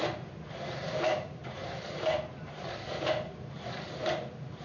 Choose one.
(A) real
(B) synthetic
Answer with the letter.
B